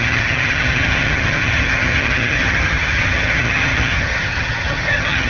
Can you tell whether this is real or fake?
fake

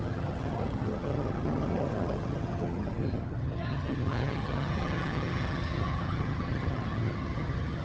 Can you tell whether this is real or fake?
fake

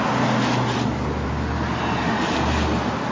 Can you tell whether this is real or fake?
real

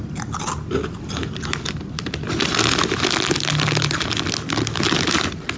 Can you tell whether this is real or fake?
real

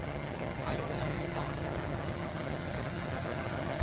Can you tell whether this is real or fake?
fake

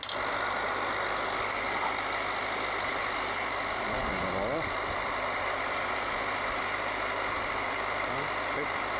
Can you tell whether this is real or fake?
real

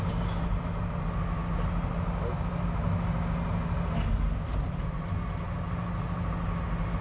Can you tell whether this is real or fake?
real